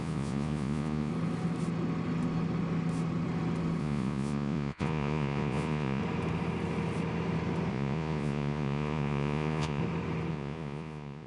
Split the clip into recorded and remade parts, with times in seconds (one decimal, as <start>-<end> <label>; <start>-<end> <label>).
0.0-1.1 remade; 1.1-3.8 recorded; 3.8-6.0 remade; 6.0-7.7 recorded; 7.7-9.8 remade; 9.8-10.3 recorded; 10.3-11.3 remade